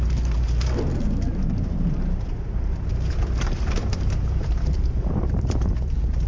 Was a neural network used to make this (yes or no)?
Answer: yes